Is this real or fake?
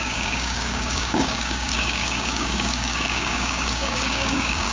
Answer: fake